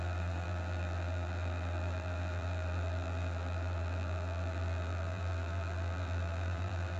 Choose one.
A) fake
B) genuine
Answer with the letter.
A